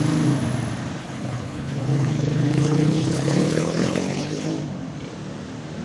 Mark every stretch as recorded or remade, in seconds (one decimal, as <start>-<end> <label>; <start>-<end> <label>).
0.0-1.0 recorded; 1.0-4.5 remade; 4.5-5.8 recorded